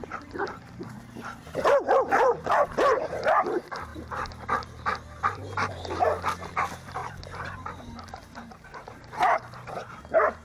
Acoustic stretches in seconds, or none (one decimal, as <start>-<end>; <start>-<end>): 3.9-6.5